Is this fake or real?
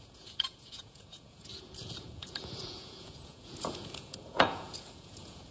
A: fake